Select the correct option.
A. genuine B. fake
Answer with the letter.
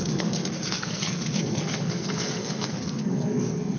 B